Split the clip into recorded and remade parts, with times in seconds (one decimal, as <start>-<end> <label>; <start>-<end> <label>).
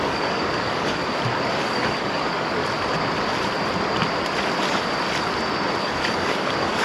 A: 0.0-1.0 remade; 1.0-1.5 recorded; 1.5-2.6 remade; 2.6-5.8 recorded; 5.8-6.8 remade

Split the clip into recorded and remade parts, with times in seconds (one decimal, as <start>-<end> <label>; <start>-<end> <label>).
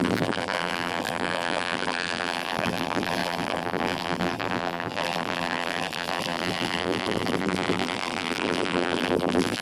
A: 0.0-9.6 remade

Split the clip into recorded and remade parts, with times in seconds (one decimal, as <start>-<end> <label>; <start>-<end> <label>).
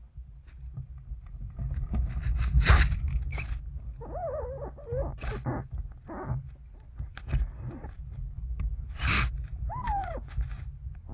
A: 0.0-11.1 recorded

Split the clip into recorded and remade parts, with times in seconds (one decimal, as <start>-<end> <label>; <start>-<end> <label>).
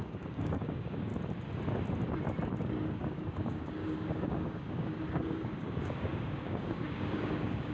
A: 0.0-1.1 remade; 1.1-2.6 recorded; 2.6-7.7 remade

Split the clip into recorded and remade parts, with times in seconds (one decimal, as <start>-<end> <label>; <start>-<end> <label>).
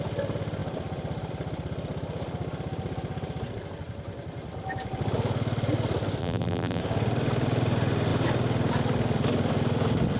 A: 0.0-6.2 recorded; 6.2-6.8 remade; 6.8-10.2 recorded